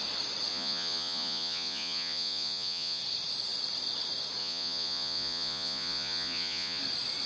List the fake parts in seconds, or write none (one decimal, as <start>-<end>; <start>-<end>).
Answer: 0.5-3.0; 4.4-6.8